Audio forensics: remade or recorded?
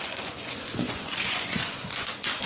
remade